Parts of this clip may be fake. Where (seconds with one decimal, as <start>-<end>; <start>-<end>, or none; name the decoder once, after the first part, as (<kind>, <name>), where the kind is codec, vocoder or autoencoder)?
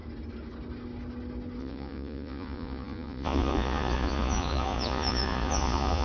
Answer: 1.6-6.0 (vocoder, Vocos)